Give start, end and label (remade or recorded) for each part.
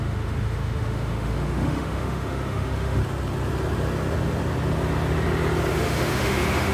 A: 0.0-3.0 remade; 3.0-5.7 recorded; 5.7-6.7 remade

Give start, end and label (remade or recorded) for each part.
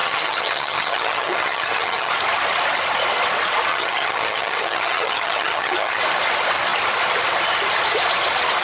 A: 0.0-2.1 remade; 2.1-3.7 recorded; 3.7-6.0 remade; 6.0-8.6 recorded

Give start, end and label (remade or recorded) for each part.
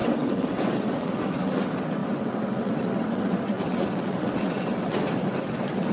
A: 0.0-5.9 remade